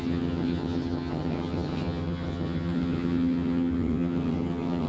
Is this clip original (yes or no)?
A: no